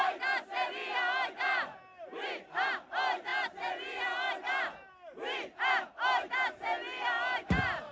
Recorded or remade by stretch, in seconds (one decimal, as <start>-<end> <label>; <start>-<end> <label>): 0.0-7.9 recorded